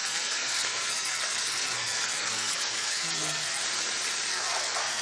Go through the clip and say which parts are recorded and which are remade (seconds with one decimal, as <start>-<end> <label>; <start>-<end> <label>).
0.0-3.6 remade; 3.6-4.3 recorded; 4.3-5.0 remade